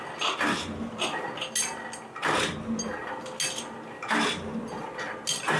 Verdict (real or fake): real